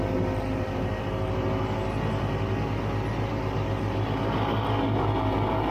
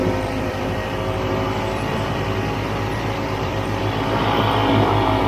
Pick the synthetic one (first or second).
second